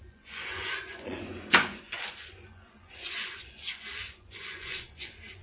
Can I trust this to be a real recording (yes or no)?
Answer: no